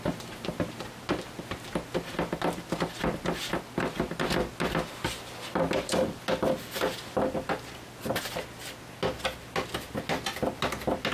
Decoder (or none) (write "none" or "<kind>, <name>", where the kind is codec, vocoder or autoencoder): none